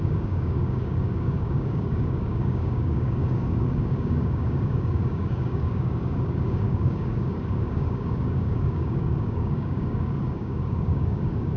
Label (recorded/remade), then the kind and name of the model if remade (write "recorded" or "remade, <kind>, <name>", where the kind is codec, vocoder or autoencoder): remade, codec, DAC